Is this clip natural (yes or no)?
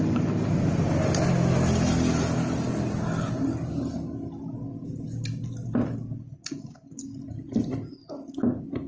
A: yes